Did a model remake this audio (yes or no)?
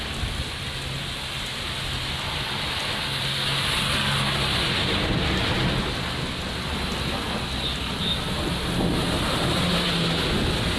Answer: no